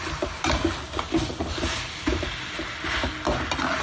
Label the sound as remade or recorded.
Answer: recorded